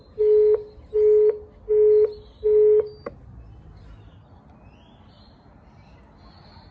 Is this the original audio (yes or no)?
yes